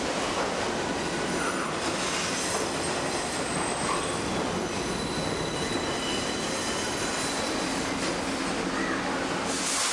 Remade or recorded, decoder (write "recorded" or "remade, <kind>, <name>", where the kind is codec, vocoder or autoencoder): recorded